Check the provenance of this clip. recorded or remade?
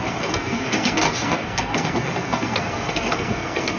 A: remade